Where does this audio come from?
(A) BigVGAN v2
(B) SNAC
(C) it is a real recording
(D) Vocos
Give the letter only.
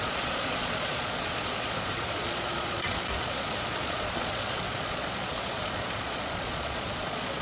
D